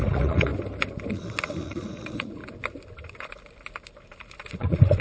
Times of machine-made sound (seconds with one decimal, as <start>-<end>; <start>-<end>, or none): 0.0-0.5; 1.1-2.4; 4.5-5.0